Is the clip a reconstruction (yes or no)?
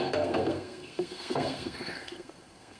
yes